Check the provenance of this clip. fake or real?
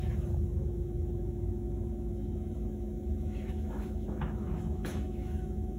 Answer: fake